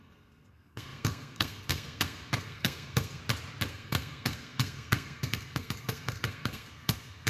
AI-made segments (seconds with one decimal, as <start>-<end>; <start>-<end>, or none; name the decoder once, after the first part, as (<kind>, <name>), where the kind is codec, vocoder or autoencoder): 0.0-3.2 (codec, SNAC); 3.7-7.3